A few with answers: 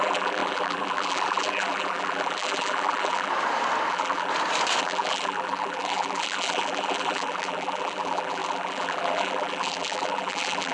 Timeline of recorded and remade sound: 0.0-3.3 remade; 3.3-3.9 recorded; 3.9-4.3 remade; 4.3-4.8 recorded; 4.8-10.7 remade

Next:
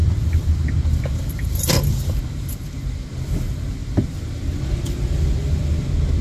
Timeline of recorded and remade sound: 0.0-2.2 remade; 2.2-3.8 recorded; 3.8-4.7 remade; 4.7-6.2 recorded